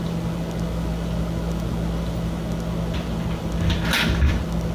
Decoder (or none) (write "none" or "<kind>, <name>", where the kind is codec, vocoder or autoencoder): none